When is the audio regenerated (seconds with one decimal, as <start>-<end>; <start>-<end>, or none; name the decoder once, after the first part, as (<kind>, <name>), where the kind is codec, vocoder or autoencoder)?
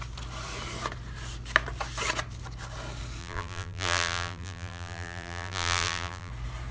3.2-6.3 (vocoder, BigVGAN v2)